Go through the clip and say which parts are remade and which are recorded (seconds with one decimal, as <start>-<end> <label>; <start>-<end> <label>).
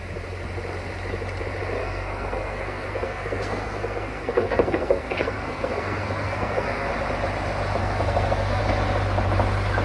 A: 0.0-1.8 recorded; 1.8-6.9 remade; 6.9-7.8 recorded; 7.8-8.6 remade; 8.6-9.8 recorded